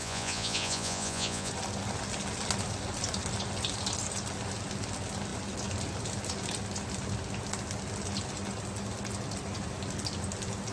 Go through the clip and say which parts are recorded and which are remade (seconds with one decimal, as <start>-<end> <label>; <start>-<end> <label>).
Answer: 0.0-1.5 remade; 1.5-10.7 recorded